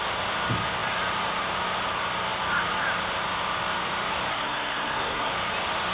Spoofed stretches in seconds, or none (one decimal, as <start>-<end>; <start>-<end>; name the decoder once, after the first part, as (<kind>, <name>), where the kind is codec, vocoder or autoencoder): 4.3-5.3 (codec, SNAC)